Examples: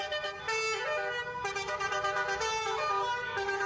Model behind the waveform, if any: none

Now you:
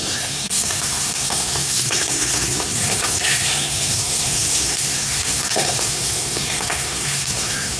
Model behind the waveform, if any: codec, SNAC